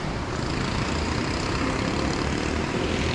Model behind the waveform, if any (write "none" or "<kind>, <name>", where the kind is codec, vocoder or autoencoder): none